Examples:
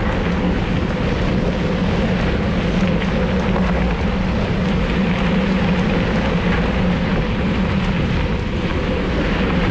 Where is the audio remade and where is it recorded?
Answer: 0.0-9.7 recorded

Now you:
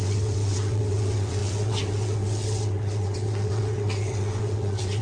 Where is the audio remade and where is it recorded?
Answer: 0.0-5.0 remade

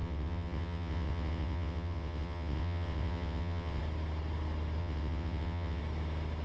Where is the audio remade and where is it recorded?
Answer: 0.0-3.8 remade; 3.8-4.8 recorded; 4.8-5.8 remade; 5.8-6.4 recorded